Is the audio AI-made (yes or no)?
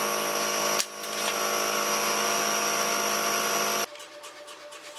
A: no